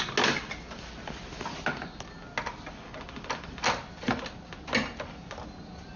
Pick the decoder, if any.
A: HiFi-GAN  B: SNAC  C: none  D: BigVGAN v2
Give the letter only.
C